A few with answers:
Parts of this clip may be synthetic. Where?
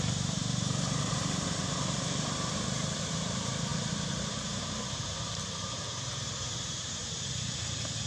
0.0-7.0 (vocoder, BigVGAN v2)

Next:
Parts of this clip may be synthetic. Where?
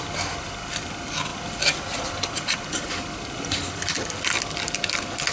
none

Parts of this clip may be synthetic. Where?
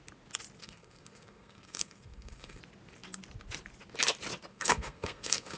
0.6-2.6 (codec, SNAC); 4.5-5.6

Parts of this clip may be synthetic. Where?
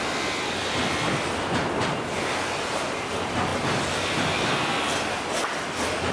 none